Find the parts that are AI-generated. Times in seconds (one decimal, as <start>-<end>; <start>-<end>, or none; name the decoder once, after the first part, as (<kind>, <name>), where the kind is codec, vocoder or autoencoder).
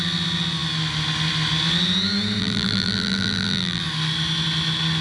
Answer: 2.4-3.8 (vocoder, BigVGAN v2)